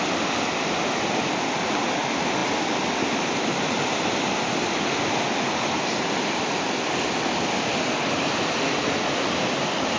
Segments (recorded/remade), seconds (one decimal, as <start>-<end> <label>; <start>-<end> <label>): 0.0-10.0 recorded